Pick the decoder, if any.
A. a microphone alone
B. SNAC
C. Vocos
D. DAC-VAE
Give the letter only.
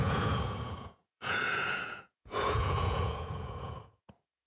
C